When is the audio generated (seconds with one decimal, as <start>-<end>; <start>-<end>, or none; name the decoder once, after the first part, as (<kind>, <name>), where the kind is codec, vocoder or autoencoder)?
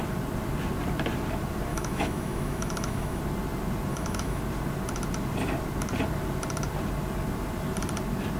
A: 1.7-3.2 (autoencoder, DAC-VAE); 3.9-4.4